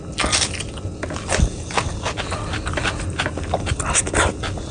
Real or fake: real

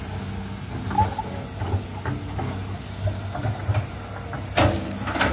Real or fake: real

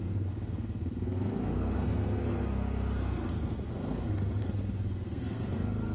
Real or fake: fake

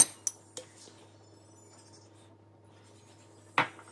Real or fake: real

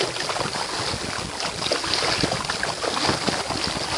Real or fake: real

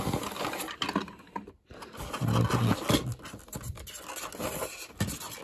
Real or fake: real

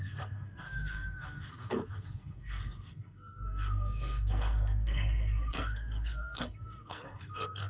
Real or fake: fake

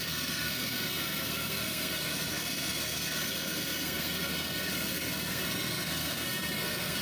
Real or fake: fake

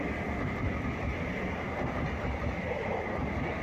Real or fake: real